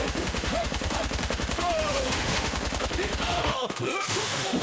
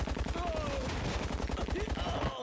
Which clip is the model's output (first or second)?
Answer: first